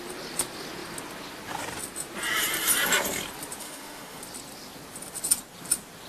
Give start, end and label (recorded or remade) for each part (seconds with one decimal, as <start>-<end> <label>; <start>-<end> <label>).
0.0-3.6 recorded; 3.6-4.2 remade; 4.2-6.1 recorded